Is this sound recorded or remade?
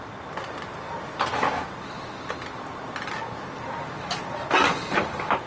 recorded